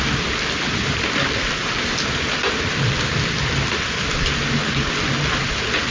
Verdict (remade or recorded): recorded